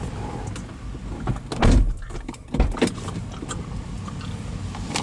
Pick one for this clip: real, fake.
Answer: real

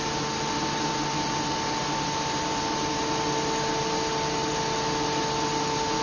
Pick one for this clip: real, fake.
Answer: real